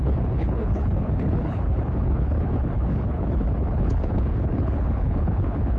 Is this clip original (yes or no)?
no